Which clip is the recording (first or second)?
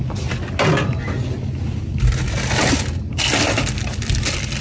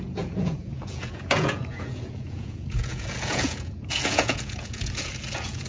first